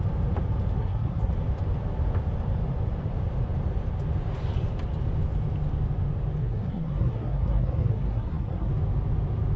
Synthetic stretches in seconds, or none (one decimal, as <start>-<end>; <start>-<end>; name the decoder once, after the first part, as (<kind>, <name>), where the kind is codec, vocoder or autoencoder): 0.8-1.3 (codec, SNAC); 6.4-8.7